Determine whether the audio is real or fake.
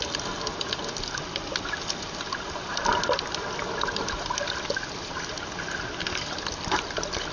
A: real